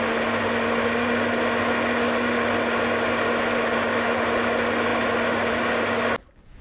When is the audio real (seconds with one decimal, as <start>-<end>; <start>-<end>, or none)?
0.0-6.6